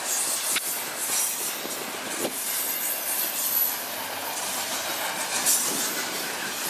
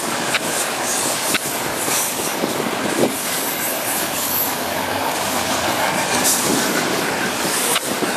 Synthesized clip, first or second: second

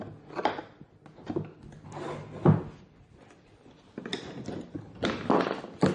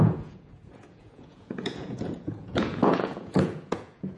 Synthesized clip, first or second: second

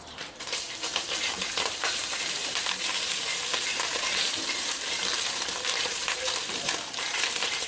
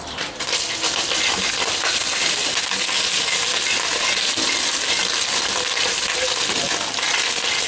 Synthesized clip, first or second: first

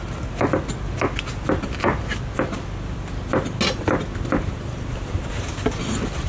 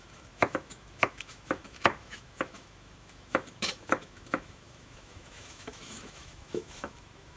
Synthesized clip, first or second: second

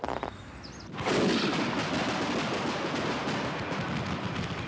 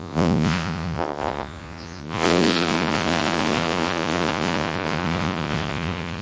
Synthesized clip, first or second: second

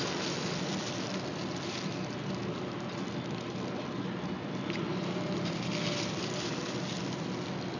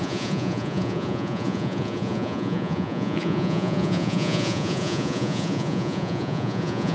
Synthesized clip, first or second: second